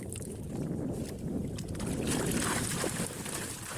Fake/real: real